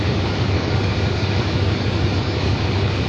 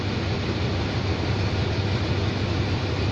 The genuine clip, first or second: second